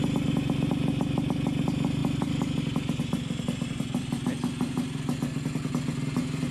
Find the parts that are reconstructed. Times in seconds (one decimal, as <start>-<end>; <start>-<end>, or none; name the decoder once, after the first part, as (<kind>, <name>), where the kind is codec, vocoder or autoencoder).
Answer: none